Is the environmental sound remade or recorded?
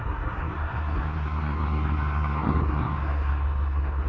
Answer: remade